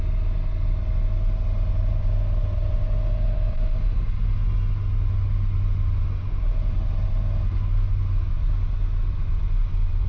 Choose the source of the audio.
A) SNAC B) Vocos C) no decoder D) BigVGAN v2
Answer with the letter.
C